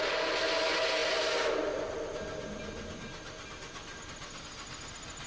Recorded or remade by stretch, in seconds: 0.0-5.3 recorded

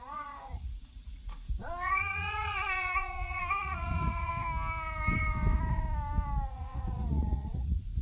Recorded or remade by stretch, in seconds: 0.0-4.3 remade; 4.3-6.5 recorded; 6.5-8.0 remade

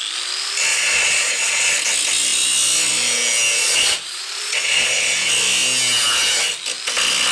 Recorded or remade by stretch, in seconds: 0.0-0.7 recorded; 0.7-1.7 remade; 1.7-3.6 recorded; 3.6-5.3 remade; 5.3-7.3 recorded

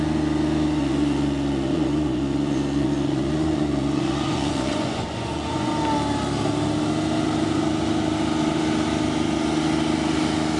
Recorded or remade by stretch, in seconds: 0.0-0.8 recorded; 0.8-5.7 remade; 5.7-10.6 recorded

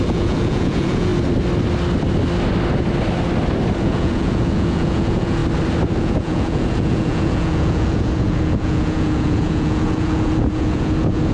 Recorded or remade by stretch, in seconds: 0.0-1.1 remade; 1.1-3.8 recorded; 3.8-5.4 remade; 5.4-6.0 recorded; 6.0-11.3 remade